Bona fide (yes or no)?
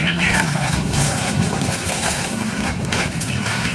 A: no